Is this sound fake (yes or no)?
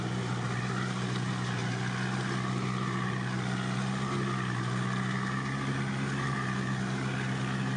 no